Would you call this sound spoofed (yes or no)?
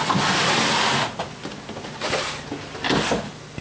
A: no